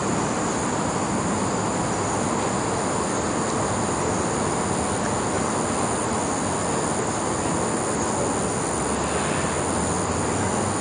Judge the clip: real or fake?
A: real